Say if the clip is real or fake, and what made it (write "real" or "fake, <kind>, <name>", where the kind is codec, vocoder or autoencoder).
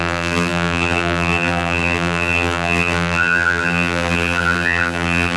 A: fake, vocoder, BigVGAN v2